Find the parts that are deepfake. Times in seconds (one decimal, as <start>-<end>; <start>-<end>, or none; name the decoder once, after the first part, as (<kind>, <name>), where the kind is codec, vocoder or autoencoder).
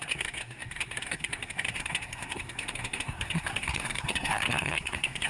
0.0-5.3 (codec, SNAC)